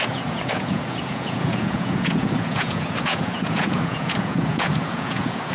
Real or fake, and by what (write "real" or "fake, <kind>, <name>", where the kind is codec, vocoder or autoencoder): fake, vocoder, Vocos